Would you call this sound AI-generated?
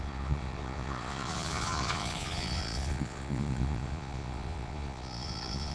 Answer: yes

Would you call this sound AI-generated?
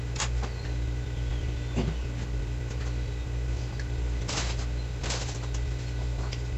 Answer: no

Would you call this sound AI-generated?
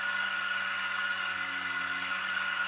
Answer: yes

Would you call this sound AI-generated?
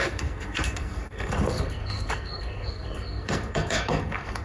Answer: yes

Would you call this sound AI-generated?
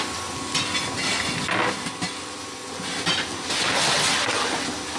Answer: no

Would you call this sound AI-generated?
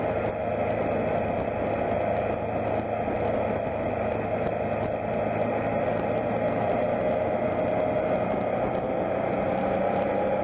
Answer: no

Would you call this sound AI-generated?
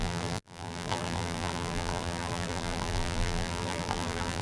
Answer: yes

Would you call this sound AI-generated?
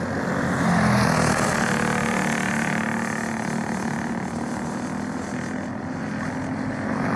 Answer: no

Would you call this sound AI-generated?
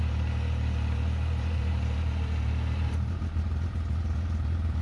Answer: no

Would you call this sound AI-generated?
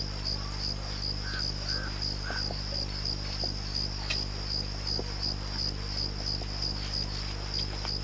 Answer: no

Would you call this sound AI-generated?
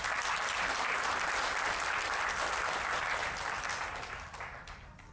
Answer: no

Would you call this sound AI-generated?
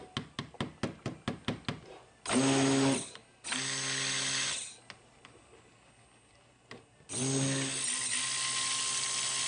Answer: no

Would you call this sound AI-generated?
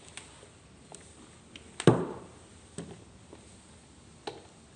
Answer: no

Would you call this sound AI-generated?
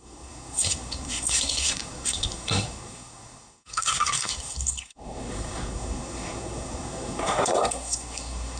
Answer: yes